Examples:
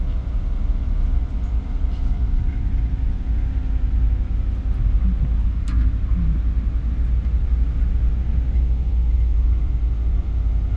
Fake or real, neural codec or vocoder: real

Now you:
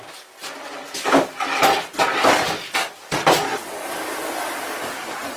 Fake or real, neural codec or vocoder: real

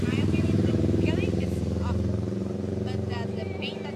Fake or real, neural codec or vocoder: fake, vocoder, BigVGAN v2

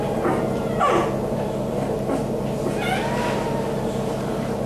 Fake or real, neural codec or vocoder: real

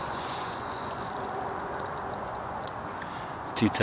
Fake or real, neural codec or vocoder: fake, vocoder, Vocos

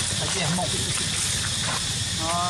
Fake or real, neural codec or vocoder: real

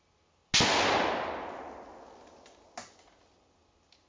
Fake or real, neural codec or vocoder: real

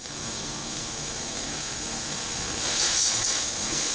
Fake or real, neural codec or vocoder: fake, codec, SNAC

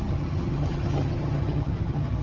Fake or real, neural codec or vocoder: fake, vocoder, HiFi-GAN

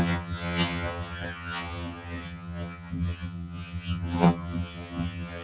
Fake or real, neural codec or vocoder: fake, vocoder, HiFi-GAN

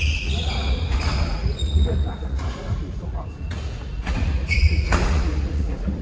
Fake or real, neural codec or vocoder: fake, vocoder, Vocos